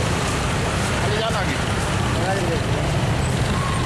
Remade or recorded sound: recorded